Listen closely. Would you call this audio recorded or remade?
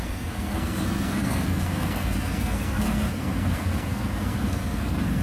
remade